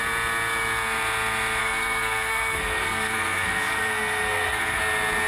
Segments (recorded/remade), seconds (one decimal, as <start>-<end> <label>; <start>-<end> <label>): 0.0-1.6 recorded; 1.6-4.8 remade; 4.8-5.3 recorded